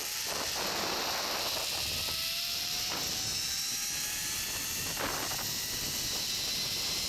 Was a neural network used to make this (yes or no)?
no